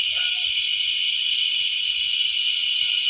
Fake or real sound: real